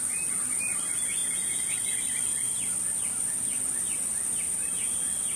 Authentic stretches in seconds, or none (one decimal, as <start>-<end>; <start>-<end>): 0.0-1.2; 1.8-5.4